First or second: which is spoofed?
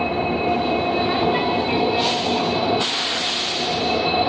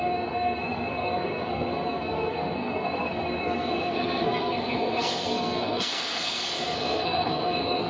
second